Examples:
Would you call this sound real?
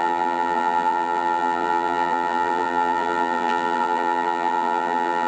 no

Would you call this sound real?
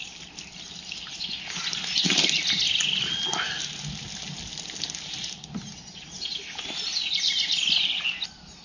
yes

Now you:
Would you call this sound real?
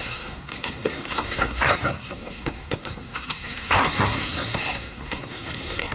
no